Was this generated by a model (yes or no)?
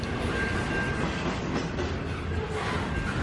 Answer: no